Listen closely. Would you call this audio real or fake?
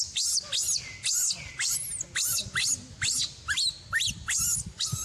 real